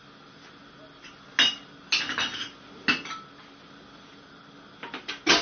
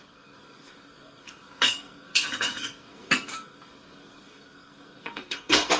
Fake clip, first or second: second